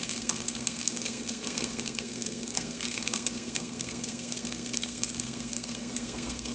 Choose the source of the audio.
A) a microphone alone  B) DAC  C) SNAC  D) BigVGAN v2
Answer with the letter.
C